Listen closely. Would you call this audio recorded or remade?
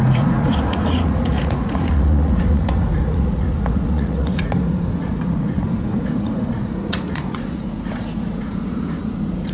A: remade